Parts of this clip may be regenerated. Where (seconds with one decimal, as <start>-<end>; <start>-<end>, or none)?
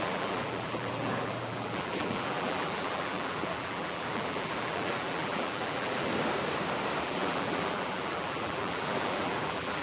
0.0-6.1; 7.0-9.8